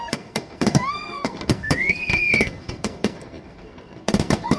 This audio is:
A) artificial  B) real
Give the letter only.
A